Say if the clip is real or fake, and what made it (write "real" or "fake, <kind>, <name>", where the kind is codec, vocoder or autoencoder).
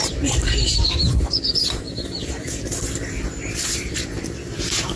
fake, vocoder, BigVGAN v2